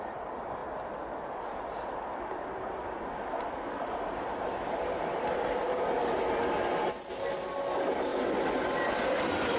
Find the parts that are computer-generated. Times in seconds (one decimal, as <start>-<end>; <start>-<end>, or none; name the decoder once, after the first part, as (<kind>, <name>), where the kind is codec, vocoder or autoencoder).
none